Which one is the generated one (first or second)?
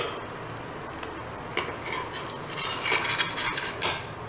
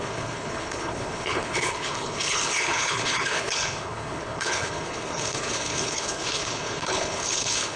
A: second